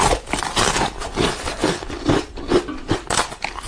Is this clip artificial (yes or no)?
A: no